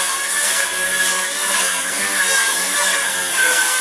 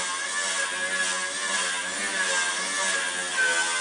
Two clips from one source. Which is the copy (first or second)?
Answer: first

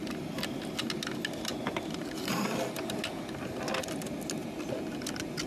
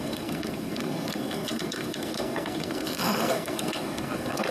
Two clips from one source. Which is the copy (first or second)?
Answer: second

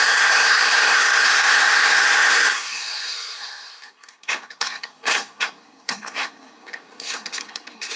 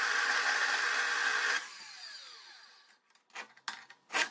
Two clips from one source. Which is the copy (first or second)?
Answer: first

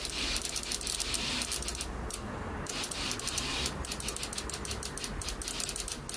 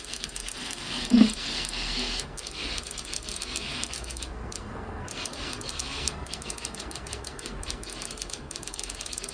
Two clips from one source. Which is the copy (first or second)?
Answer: second